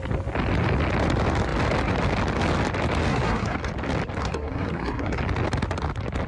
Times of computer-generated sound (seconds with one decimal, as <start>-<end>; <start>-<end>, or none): 3.1-3.7; 4.2-5.2